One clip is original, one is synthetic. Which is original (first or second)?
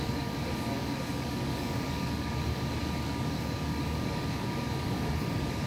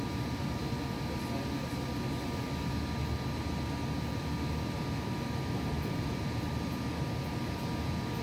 second